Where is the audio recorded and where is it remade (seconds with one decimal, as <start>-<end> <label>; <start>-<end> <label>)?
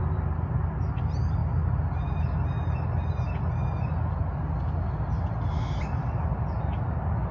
0.0-7.3 recorded